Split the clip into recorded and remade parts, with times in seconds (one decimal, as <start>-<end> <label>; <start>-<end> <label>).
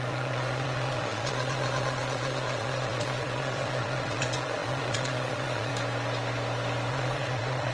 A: 0.0-5.7 remade; 5.7-6.9 recorded; 6.9-7.7 remade